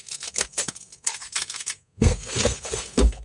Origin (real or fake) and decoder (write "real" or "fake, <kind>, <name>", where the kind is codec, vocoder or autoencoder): fake, codec, SNAC